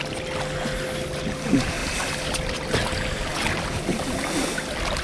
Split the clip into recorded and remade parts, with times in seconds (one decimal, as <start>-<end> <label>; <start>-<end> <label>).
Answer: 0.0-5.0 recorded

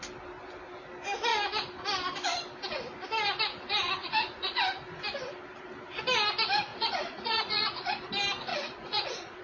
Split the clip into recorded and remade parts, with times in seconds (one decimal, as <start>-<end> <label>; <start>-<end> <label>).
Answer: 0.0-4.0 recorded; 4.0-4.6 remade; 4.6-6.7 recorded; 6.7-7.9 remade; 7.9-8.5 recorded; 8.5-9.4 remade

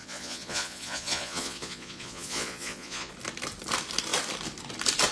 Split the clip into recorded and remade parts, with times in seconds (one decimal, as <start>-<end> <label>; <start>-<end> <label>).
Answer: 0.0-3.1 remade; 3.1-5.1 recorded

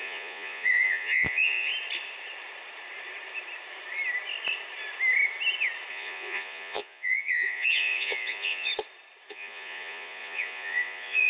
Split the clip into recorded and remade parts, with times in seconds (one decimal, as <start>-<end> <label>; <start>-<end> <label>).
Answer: 0.0-1.7 remade; 1.7-5.9 recorded; 5.9-8.7 remade; 8.7-9.3 recorded; 9.3-11.3 remade